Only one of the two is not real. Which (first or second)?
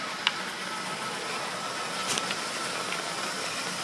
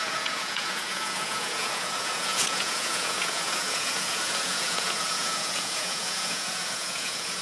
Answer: second